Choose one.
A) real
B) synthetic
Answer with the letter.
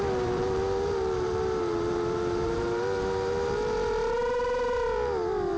B